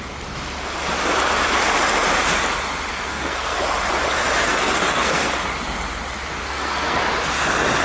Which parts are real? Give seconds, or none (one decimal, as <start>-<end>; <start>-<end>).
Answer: 0.0-2.9; 3.6-4.4; 5.3-6.4; 7.0-7.8